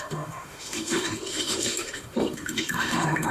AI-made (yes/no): yes